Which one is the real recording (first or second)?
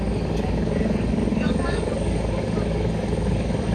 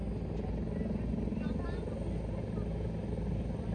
second